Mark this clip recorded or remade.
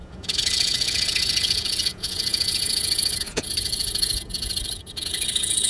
remade